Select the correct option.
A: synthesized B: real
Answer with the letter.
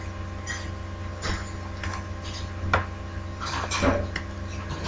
B